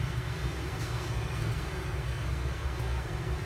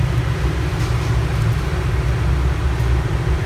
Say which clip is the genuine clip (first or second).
second